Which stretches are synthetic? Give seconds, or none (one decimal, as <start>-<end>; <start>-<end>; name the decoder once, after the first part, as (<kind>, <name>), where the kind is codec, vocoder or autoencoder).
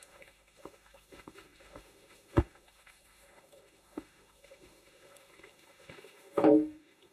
0.0-7.1 (autoencoder, DAC-VAE)